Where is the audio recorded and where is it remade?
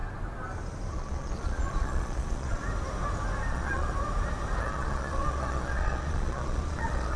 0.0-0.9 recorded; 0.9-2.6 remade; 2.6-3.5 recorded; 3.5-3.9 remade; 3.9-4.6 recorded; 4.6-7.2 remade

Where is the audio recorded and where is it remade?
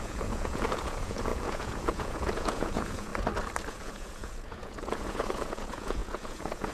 0.0-3.1 remade; 3.1-3.7 recorded; 3.7-6.7 remade